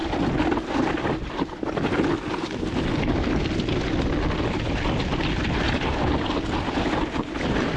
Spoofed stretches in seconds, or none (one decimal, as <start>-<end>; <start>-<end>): none